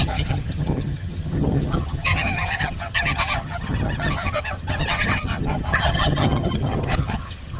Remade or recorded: remade